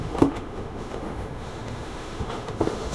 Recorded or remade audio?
remade